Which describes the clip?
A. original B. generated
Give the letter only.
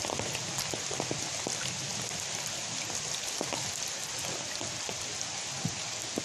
A